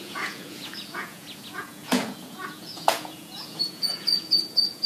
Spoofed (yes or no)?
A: yes